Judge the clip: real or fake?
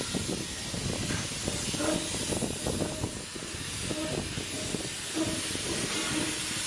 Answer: real